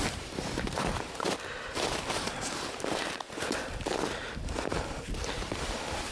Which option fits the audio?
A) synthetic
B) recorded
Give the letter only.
A